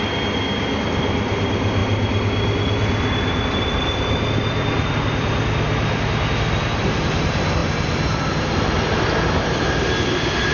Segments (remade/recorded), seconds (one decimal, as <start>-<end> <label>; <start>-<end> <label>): 0.0-10.5 recorded